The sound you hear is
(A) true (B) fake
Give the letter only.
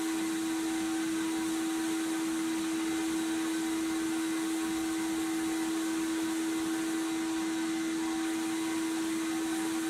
A